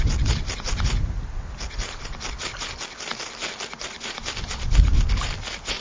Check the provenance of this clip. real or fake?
real